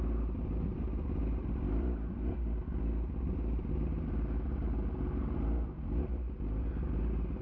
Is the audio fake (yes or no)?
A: yes